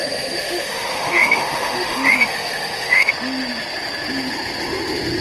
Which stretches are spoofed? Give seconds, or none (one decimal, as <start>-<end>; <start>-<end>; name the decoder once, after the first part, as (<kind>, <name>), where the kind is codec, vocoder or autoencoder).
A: 0.0-3.1 (autoencoder, DAC-VAE)